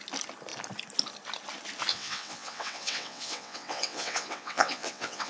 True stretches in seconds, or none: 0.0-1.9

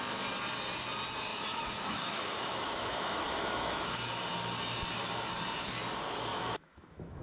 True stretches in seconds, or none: 0.0-1.3; 3.9-6.3

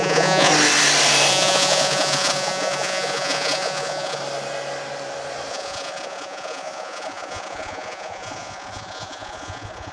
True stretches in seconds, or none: 0.5-1.3; 4.2-5.5

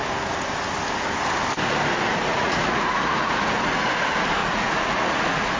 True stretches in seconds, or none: 0.0-2.3; 3.7-4.4

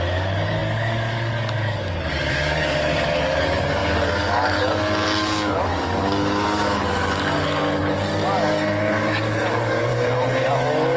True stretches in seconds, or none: 9.9-10.5

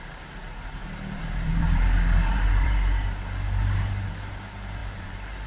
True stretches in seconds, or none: none